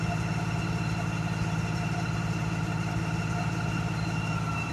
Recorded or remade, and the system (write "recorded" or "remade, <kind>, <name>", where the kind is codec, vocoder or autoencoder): recorded